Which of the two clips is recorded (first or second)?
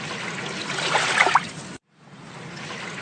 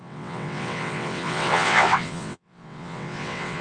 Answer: first